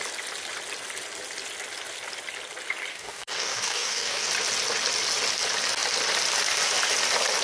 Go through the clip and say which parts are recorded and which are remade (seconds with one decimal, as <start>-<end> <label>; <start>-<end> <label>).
0.0-2.9 recorded; 2.9-4.3 remade; 4.3-7.4 recorded

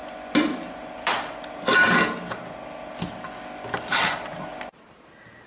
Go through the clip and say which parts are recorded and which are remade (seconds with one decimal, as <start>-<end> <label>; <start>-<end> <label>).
0.0-5.5 recorded

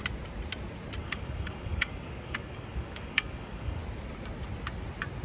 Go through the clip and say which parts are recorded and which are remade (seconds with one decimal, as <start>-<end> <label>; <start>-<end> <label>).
0.0-1.0 recorded; 1.0-3.8 remade; 3.8-5.2 recorded